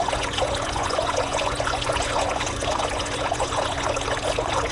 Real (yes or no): no